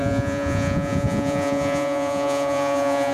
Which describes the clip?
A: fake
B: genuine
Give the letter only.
A